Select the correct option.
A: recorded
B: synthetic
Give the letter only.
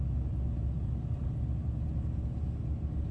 A